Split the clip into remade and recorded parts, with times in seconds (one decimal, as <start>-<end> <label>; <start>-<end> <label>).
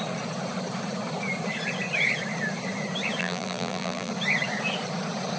0.0-3.2 recorded; 3.2-4.1 remade; 4.1-5.4 recorded